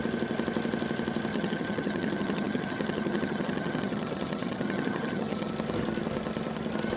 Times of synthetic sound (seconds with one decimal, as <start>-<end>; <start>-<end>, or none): 1.3-5.5